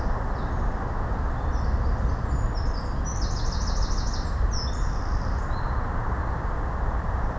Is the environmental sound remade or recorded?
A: recorded